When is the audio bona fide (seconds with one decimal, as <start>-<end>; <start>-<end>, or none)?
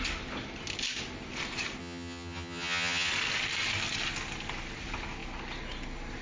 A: 0.0-1.8; 3.1-6.2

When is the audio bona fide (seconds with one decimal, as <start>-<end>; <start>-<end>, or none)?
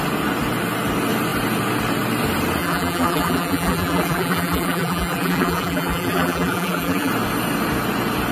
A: 0.0-2.6; 7.1-8.3